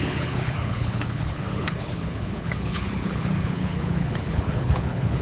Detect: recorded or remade remade